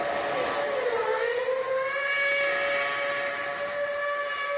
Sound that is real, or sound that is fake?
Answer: real